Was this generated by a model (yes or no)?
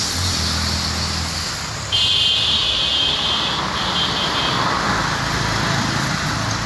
no